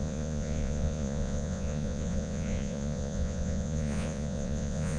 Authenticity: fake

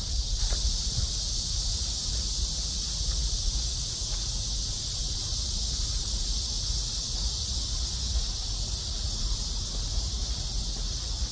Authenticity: fake